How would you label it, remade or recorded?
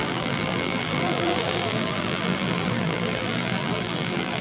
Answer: remade